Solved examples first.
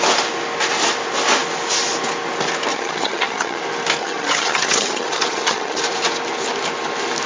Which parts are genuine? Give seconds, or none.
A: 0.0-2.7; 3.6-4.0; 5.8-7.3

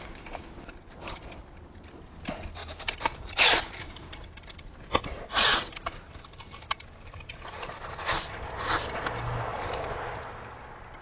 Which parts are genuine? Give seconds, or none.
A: 0.0-2.6; 4.5-5.1; 7.8-9.5; 10.2-11.0

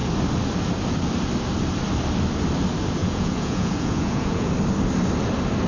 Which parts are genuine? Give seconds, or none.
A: 0.0-3.0; 4.5-5.7